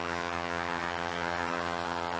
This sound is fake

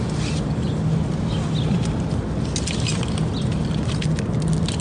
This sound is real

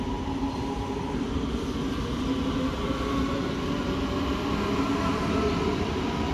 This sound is real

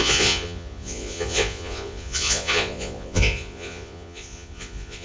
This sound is fake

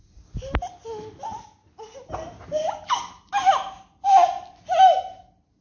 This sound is real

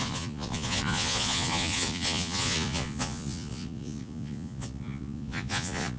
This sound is fake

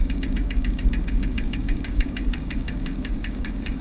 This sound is fake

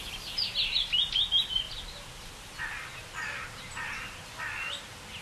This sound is real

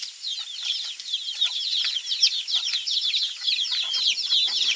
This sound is real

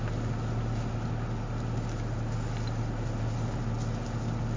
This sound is real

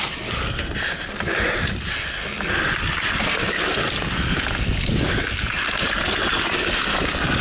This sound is real